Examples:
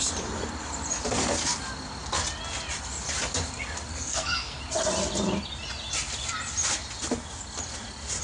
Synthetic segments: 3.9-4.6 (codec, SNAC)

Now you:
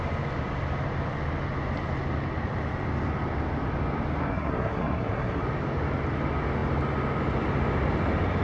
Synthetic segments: 4.2-5.4 (codec, SNAC)

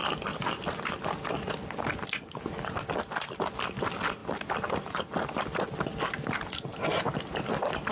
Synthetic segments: none

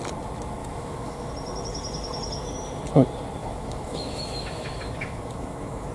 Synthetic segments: 0.6-1.3 (autoencoder, DAC-VAE); 3.4-5.9

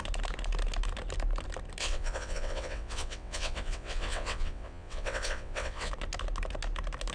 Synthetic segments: 1.8-5.9 (vocoder, WaveNeXt)

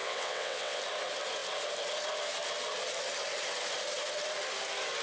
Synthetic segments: 0.0-0.8 (vocoder, WaveNeXt)

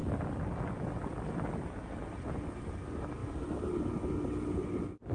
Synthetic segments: none